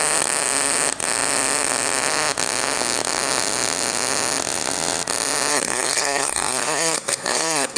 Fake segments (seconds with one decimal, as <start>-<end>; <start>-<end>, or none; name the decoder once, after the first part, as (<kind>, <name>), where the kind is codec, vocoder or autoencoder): 5.5-7.8 (codec, SNAC)